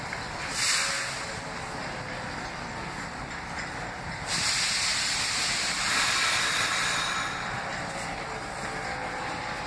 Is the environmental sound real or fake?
real